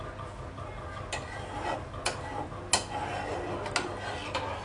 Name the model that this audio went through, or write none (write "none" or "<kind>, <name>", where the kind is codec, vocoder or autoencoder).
none